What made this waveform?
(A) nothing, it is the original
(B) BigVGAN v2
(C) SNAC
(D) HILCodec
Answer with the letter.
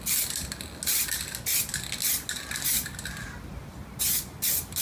A